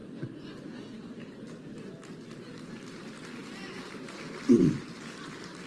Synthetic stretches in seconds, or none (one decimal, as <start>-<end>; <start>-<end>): none